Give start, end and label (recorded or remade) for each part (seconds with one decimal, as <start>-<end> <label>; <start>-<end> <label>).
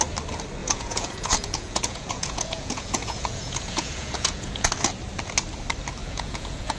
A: 0.0-0.6 recorded; 0.6-4.7 remade; 4.7-6.0 recorded; 6.0-6.8 remade